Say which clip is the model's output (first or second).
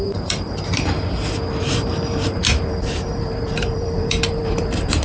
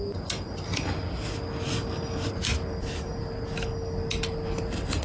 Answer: first